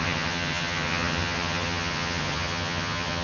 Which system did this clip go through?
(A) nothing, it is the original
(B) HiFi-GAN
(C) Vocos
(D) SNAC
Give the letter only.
B